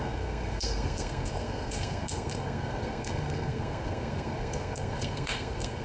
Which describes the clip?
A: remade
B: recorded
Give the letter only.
A